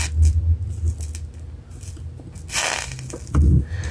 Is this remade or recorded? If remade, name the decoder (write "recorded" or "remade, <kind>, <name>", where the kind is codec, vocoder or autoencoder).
recorded